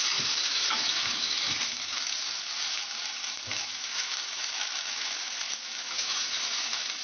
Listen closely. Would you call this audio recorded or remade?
remade